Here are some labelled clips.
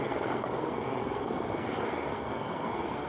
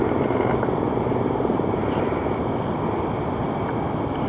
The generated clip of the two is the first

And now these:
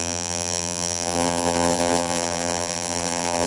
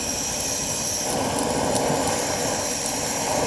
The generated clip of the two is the first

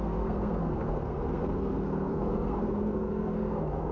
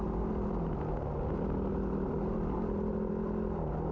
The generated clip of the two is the first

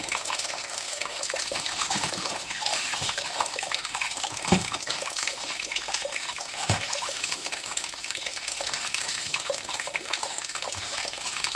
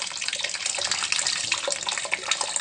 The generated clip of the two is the first